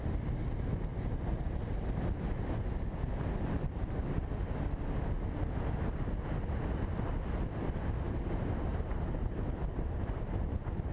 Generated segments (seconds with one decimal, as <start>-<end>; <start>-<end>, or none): 0.9-2.0; 8.7-9.3